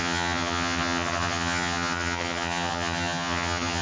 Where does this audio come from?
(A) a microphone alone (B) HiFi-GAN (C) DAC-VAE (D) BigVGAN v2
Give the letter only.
B